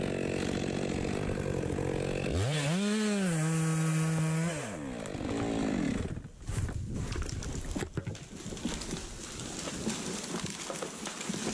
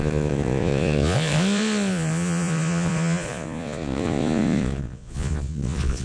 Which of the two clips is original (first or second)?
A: first